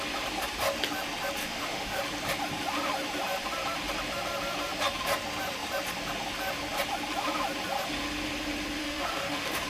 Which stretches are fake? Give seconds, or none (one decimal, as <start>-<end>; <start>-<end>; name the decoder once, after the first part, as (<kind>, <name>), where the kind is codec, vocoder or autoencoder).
1.4-2.0 (autoencoder, DAC-VAE); 8.8-9.7